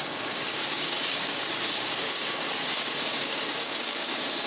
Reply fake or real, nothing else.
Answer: fake